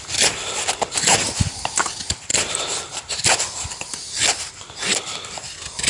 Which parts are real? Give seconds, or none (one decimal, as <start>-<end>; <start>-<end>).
none